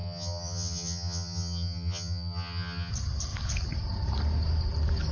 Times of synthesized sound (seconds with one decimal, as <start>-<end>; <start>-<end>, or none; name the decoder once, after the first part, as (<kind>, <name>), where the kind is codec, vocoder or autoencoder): 0.0-2.9 (vocoder, HiFi-GAN)